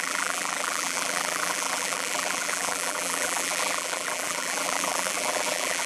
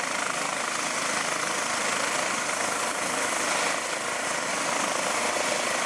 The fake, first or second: first